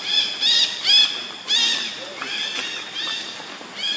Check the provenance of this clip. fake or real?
real